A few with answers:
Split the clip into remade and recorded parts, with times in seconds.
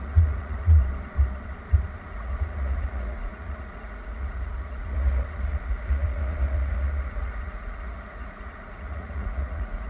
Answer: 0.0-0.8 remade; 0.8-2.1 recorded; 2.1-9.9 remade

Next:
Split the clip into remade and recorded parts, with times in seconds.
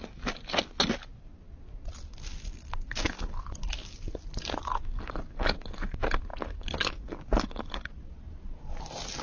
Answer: 0.0-9.2 recorded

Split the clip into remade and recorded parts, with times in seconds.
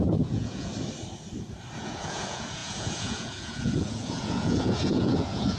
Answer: 0.0-0.7 remade; 0.7-1.8 recorded; 1.8-5.6 remade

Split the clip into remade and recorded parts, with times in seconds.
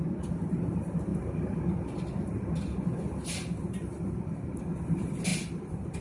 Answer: 0.0-6.0 recorded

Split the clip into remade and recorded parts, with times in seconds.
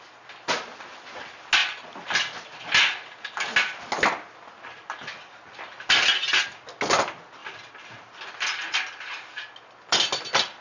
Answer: 0.0-10.6 recorded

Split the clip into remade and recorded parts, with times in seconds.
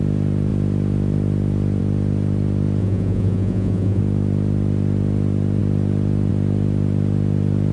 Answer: 0.0-2.8 recorded; 2.8-4.0 remade; 4.0-7.7 recorded